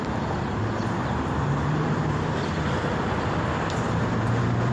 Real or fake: fake